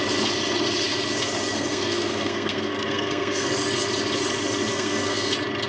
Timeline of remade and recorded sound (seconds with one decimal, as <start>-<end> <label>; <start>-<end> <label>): 0.0-1.5 recorded; 1.5-3.5 remade; 3.5-4.7 recorded; 4.7-5.3 remade; 5.3-5.7 recorded